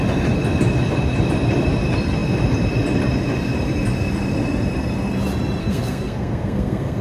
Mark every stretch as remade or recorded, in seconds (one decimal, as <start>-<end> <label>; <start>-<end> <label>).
0.0-5.6 recorded; 5.6-7.0 remade